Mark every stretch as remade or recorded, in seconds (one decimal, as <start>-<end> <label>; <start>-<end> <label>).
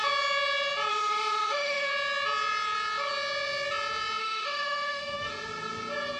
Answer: 0.0-0.9 recorded; 0.9-1.9 remade; 1.9-4.2 recorded; 4.2-5.3 remade; 5.3-6.2 recorded